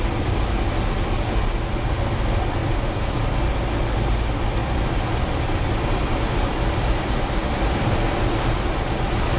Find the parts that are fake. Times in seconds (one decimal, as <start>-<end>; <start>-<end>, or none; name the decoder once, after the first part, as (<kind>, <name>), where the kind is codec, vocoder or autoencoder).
4.6-9.4 (vocoder, BigVGAN v2)